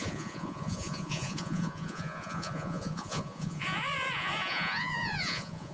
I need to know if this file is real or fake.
fake